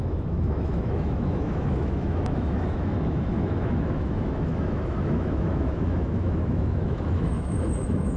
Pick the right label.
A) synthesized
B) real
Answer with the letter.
A